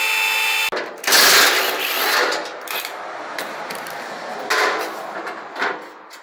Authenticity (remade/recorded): recorded